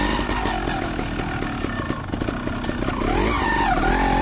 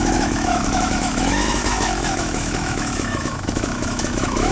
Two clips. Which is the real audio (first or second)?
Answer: first